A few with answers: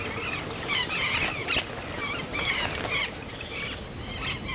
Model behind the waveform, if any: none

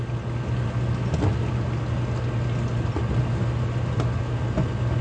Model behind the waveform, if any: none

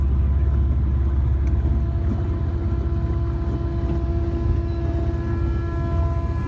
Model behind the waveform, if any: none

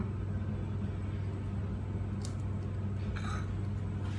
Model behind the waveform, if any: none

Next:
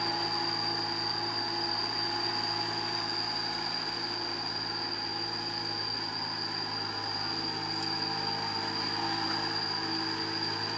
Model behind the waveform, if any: none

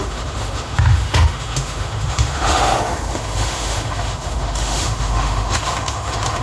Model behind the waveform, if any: autoencoder, DAC-VAE